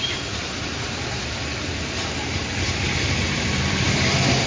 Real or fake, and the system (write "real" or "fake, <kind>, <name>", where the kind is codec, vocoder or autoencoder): fake, vocoder, BigVGAN v2